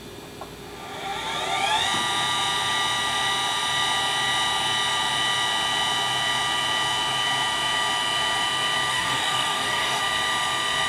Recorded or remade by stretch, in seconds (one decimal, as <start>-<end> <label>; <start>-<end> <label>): 0.0-8.9 recorded; 8.9-10.0 remade; 10.0-10.9 recorded